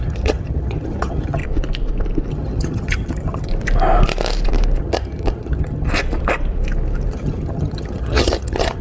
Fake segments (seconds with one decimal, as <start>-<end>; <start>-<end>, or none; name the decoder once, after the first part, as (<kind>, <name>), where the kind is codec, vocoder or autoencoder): 0.0-1.4 (vocoder, HiFi-GAN); 2.3-3.5; 4.8-5.9; 7.1-8.8